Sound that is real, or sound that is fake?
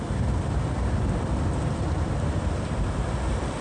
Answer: real